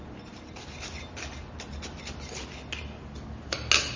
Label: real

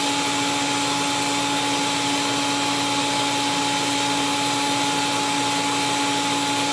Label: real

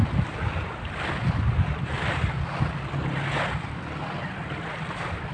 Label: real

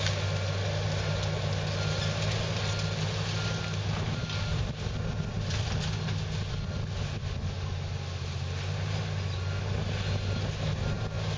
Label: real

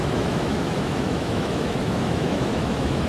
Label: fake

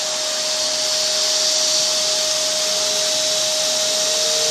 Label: real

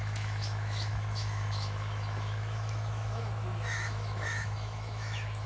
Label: fake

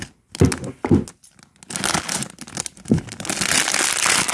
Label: real